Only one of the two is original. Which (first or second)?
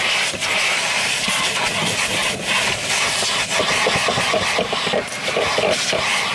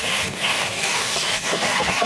first